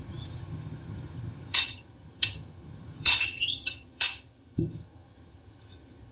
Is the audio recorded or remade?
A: remade